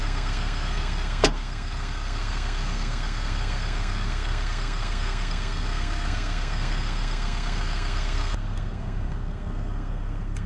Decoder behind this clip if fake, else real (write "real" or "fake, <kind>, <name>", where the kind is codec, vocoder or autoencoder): fake, codec, SNAC